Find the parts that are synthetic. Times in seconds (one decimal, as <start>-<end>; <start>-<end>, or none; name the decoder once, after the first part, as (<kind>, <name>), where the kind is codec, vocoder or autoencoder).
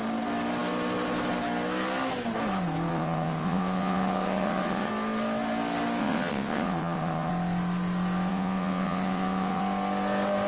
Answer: 2.9-4.9 (vocoder, WaveNeXt); 6.0-7.3; 8.3-9.6